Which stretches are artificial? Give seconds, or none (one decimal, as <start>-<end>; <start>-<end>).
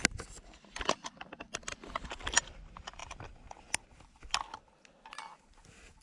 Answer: none